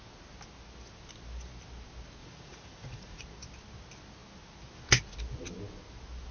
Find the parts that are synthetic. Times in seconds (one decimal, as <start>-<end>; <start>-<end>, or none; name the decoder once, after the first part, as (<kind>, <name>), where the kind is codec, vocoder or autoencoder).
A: 2.2-3.2 (vocoder, Vocos)